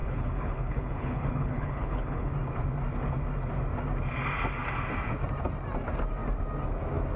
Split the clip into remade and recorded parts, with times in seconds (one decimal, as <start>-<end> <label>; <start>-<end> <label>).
0.0-2.3 remade; 2.3-7.2 recorded